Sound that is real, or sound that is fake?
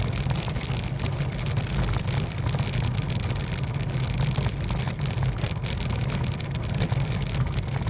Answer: real